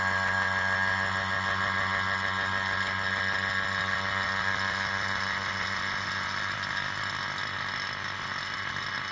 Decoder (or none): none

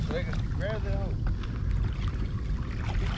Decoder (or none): none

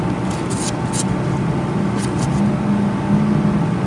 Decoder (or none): none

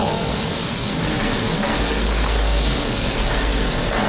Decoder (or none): codec, SNAC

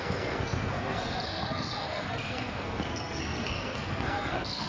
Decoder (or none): codec, SNAC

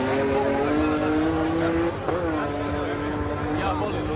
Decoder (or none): none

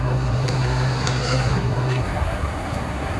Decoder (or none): codec, SNAC